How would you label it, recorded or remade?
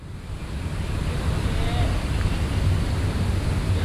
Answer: recorded